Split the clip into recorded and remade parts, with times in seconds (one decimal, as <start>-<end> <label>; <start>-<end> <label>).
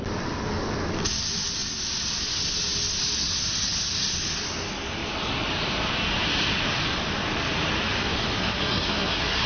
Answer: 0.0-8.4 recorded; 8.4-9.5 remade